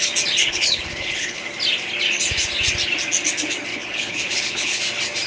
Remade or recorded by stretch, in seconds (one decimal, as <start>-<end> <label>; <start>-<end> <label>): 0.0-0.4 recorded; 0.4-1.4 remade; 1.4-3.7 recorded; 3.7-4.8 remade; 4.8-5.3 recorded